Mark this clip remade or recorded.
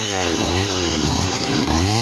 remade